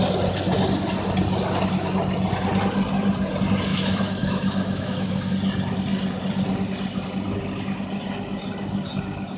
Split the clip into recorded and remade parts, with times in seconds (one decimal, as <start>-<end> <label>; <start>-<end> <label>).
0.0-3.7 recorded; 3.7-5.3 remade; 5.3-9.4 recorded